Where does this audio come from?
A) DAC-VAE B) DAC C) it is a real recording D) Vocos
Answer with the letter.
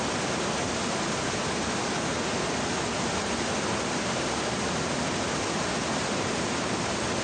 C